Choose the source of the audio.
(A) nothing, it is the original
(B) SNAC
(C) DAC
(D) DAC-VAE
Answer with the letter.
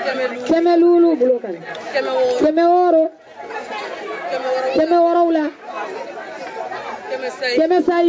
A